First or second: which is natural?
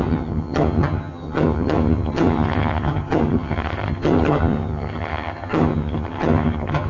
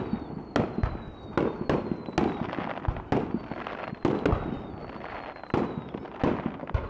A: second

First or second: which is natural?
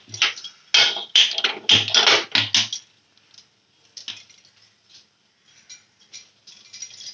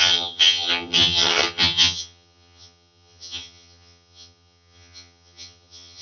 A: first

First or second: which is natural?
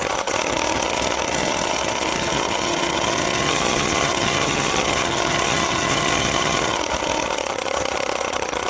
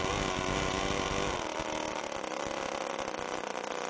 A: second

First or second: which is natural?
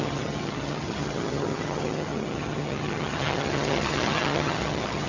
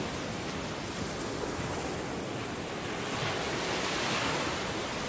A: second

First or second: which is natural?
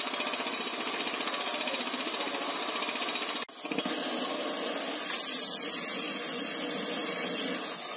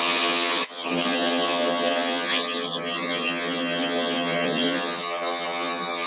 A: first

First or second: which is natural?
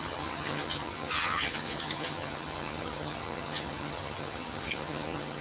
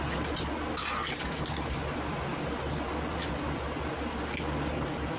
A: second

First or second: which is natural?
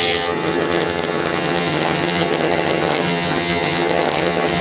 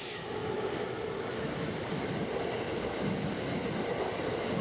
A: second